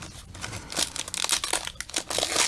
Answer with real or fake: real